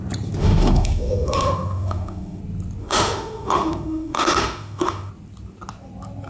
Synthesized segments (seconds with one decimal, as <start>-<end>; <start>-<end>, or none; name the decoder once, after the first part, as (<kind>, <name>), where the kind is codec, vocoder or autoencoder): 0.4-2.4 (autoencoder, DAC-VAE); 2.8-5.1